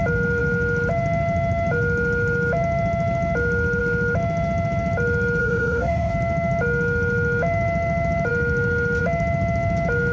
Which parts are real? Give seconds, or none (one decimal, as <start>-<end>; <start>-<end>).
0.0-5.4; 6.1-10.1